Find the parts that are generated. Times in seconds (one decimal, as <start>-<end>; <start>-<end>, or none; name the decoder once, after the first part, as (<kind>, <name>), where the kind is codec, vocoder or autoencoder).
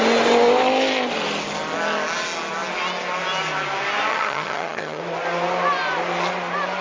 4.1-5.0 (vocoder, HiFi-GAN)